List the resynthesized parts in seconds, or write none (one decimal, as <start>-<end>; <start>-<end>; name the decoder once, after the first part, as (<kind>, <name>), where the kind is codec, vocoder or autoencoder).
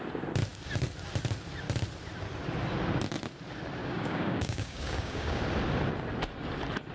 3.8-5.4 (codec, DAC)